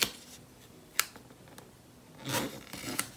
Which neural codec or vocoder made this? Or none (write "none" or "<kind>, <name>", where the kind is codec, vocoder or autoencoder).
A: vocoder, BigVGAN v2